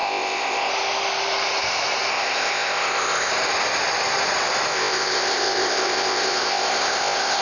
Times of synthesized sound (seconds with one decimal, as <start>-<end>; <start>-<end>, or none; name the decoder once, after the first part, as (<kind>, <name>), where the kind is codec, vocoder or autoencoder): 0.0-0.7 (codec, ZipCodec); 2.1-3.3; 4.7-7.4